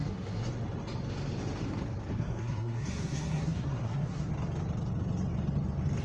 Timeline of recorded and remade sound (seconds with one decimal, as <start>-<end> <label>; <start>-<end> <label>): 0.0-0.5 remade; 0.5-2.1 recorded; 2.1-4.3 remade; 4.3-6.0 recorded